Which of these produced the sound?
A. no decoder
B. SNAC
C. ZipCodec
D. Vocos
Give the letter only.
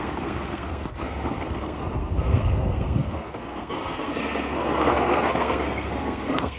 B